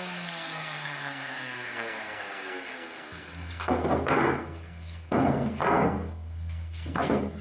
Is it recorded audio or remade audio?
remade